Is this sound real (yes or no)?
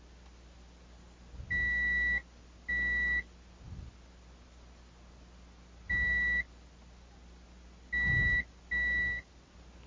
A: yes